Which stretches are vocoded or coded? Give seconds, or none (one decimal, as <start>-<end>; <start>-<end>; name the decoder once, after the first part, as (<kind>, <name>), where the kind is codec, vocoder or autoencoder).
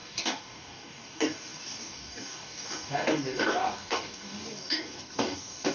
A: 0.0-5.7 (codec, DAC)